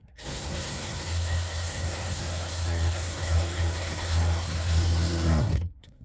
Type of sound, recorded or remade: remade